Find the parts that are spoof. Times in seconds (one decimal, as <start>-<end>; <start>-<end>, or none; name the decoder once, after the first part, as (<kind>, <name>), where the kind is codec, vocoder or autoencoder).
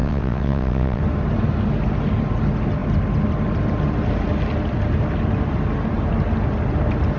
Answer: 0.0-1.0 (vocoder, WaveNeXt)